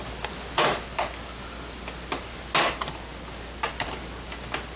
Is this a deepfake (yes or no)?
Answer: no